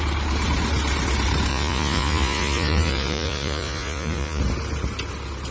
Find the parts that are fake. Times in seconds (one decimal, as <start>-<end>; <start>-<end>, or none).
1.5-4.4